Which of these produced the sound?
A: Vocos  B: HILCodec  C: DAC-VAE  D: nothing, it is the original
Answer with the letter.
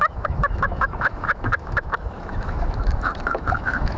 C